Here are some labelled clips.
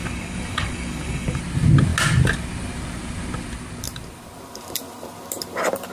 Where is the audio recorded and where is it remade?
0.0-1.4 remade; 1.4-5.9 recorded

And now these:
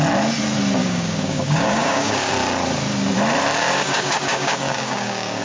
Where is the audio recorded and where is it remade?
0.0-0.8 recorded; 0.8-2.3 remade; 2.3-3.6 recorded; 3.6-5.4 remade